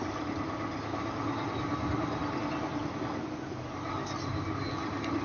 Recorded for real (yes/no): yes